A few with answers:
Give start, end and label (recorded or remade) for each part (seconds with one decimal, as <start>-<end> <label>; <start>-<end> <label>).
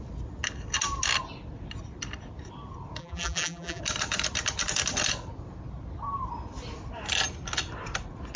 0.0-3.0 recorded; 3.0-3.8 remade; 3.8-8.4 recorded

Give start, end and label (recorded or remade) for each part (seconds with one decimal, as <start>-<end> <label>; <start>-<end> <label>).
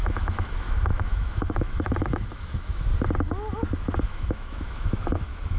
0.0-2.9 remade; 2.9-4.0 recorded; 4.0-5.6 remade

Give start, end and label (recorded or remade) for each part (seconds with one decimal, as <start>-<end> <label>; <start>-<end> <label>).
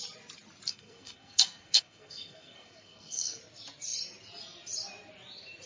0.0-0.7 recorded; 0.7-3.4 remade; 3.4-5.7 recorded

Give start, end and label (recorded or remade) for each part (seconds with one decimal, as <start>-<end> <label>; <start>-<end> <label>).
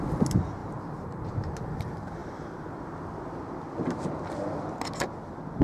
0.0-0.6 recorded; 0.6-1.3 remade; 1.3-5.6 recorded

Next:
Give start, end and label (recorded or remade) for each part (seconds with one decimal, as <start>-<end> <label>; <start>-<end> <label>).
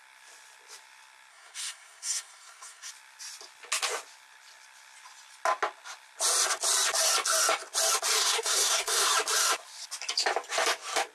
0.0-1.3 recorded; 1.3-2.9 remade; 2.9-8.2 recorded; 8.2-9.1 remade; 9.1-11.1 recorded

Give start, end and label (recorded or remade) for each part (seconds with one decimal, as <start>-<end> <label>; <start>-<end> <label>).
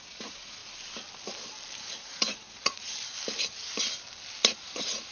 0.0-0.6 remade; 0.6-2.0 recorded; 2.0-2.9 remade; 2.9-4.6 recorded; 4.6-5.1 remade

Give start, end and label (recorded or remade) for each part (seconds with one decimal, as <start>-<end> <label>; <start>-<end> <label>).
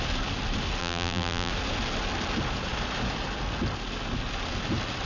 0.0-0.8 recorded; 0.8-1.5 remade; 1.5-5.1 recorded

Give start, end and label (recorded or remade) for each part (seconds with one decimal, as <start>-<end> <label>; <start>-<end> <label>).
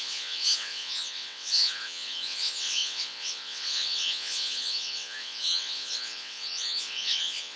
0.0-7.6 remade